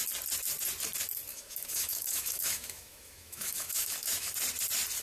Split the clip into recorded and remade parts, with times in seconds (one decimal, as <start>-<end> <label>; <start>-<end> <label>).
0.0-1.3 recorded; 1.3-4.3 remade; 4.3-5.0 recorded